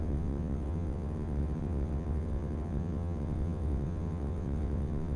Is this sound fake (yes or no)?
yes